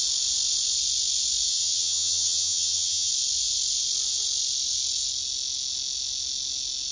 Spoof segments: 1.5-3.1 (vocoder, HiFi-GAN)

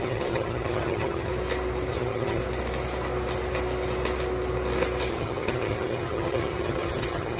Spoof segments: 0.0-1.3 (vocoder, HiFi-GAN); 1.9-2.4; 5.1-7.4

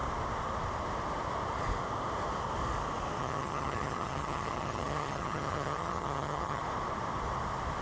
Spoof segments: 3.2-6.6 (vocoder, HiFi-GAN)

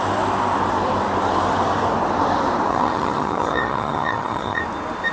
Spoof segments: 2.7-4.6 (vocoder, HiFi-GAN)

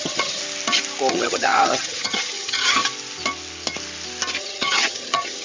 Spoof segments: 0.0-0.4 (vocoder, HiFi-GAN); 1.1-2.8; 4.4-5.4

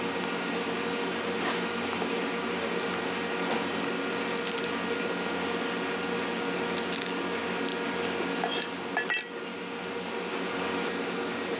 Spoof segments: none

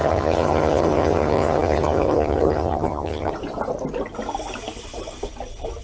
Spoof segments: 0.0-3.3 (vocoder, HiFi-GAN)